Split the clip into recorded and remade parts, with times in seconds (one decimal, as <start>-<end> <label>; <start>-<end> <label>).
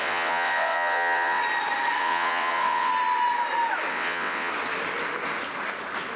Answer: 0.0-1.4 remade; 1.4-2.0 recorded; 2.0-2.9 remade; 2.9-3.9 recorded; 3.9-4.5 remade; 4.5-6.2 recorded